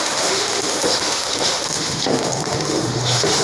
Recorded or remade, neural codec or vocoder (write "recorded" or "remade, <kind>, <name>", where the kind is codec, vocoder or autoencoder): remade, autoencoder, DAC-VAE